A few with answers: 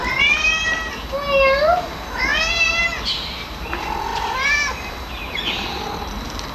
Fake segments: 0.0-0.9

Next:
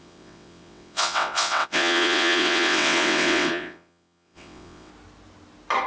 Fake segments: 0.0-4.9

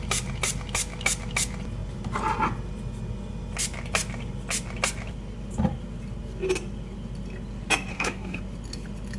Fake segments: 7.9-8.4

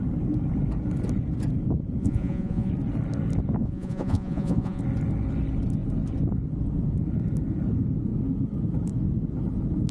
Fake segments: 2.0-2.7; 3.6-4.8